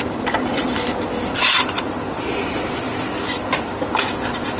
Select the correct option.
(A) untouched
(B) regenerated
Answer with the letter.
A